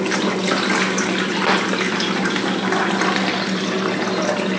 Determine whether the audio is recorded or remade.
recorded